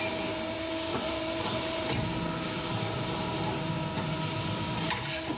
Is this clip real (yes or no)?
no